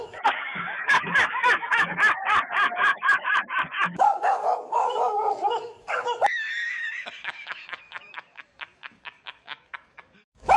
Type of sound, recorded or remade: remade